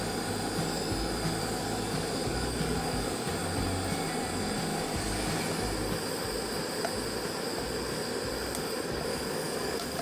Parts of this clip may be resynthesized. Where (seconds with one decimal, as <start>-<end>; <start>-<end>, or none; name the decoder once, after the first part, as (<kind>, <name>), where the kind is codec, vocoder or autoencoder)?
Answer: 1.4-3.3 (codec, DAC); 4.7-5.4; 9.1-10.0